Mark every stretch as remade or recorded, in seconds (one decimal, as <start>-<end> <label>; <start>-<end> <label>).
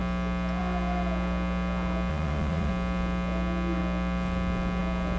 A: 0.0-2.1 recorded; 2.1-2.7 remade; 2.7-5.2 recorded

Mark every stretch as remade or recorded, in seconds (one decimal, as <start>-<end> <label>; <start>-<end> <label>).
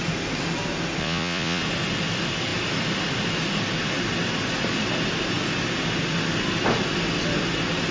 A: 0.0-1.0 recorded; 1.0-1.6 remade; 1.6-7.9 recorded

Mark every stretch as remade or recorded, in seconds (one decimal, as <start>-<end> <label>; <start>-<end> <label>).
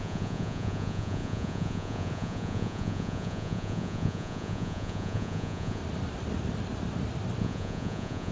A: 0.0-5.8 remade; 5.8-7.4 recorded; 7.4-8.3 remade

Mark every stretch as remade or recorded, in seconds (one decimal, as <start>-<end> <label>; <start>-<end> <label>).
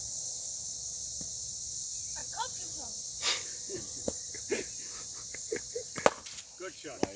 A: 0.0-2.2 recorded; 2.2-4.3 remade; 4.3-7.2 recorded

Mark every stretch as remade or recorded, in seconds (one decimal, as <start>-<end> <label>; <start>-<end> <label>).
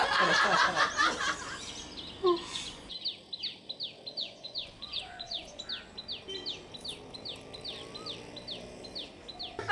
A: 0.0-2.5 recorded; 2.5-3.0 remade; 3.0-4.2 recorded; 4.2-5.6 remade; 5.6-9.7 recorded